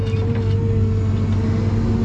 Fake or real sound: real